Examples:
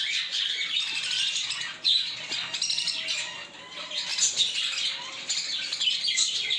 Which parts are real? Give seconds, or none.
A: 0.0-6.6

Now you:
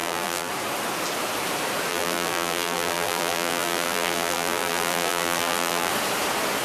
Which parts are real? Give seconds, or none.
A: 0.5-1.9; 5.9-6.6

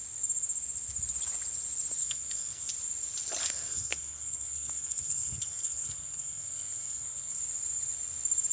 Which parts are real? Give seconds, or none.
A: 0.0-2.0; 2.7-3.4; 7.4-8.5

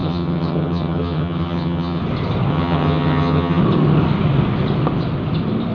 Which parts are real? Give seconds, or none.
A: 2.0-2.5; 3.6-5.7

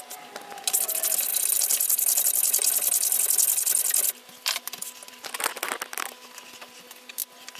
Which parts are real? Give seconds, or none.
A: 0.0-7.6

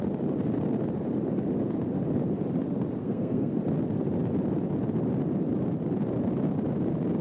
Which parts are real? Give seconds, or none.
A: 0.0-3.0; 3.6-7.2

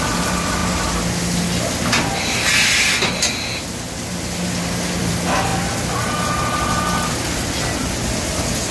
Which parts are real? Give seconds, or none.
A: 0.0-8.7